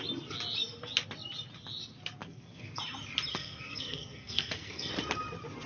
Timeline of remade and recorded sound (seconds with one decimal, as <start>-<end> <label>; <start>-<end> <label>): 0.0-2.2 recorded; 2.2-2.8 remade; 2.8-3.3 recorded; 3.3-4.9 remade; 4.9-5.7 recorded